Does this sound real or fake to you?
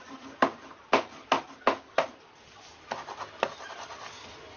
real